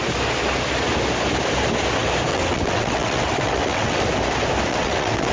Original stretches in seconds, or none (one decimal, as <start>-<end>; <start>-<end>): 0.0-2.3; 4.0-4.7